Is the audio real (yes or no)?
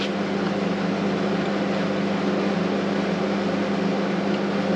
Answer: yes